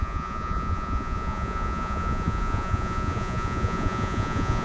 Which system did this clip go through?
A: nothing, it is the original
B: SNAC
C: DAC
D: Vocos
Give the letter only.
D